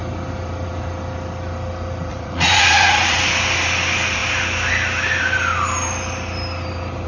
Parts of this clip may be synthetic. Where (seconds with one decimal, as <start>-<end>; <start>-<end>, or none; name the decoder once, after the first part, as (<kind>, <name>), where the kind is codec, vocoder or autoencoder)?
2.1-3.2 (vocoder, Vocos)